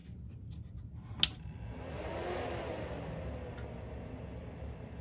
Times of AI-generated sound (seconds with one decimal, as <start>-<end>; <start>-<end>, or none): none